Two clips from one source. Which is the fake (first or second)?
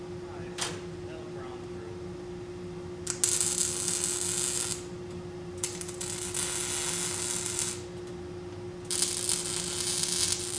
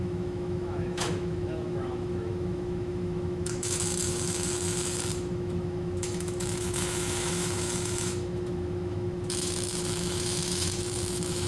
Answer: second